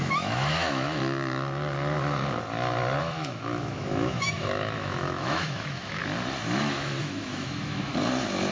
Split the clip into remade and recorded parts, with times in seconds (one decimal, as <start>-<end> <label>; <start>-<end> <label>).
0.0-1.0 remade; 1.0-3.0 recorded; 3.0-6.0 remade; 6.0-6.6 recorded; 6.6-7.9 remade; 7.9-8.5 recorded